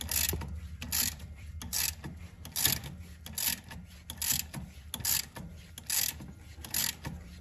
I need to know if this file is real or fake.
real